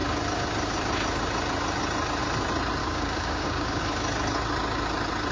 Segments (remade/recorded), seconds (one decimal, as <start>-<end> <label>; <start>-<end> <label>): 0.0-2.8 recorded; 2.8-3.8 remade; 3.8-5.3 recorded